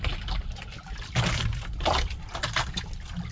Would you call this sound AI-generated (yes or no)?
no